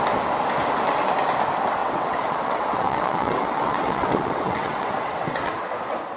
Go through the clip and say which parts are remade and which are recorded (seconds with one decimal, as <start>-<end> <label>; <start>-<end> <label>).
0.0-1.8 recorded; 1.8-5.5 remade; 5.5-6.2 recorded